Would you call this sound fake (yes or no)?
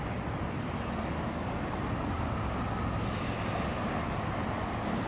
no